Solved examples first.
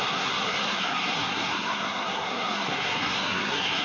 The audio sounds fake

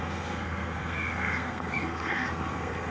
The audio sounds fake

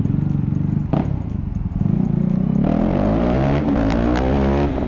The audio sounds real